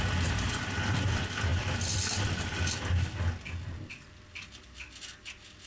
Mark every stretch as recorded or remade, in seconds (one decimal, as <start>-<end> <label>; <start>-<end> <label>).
0.0-5.7 recorded